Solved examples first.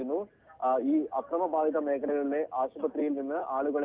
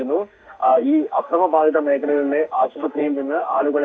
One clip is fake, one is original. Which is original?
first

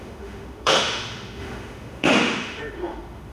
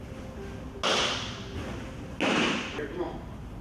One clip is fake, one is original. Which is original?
second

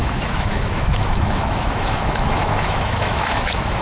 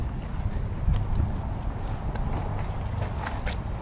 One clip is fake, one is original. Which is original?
second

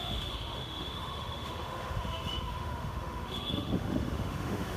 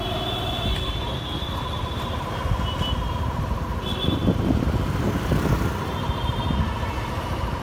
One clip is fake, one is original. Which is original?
second